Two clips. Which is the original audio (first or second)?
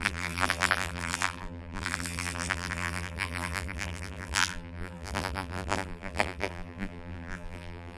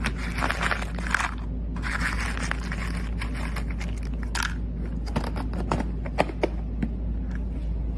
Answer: second